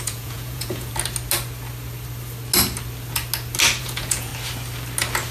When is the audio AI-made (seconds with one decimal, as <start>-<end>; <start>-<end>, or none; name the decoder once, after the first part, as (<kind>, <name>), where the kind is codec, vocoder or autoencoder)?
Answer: 0.0-0.9 (vocoder, Vocos); 3.8-4.3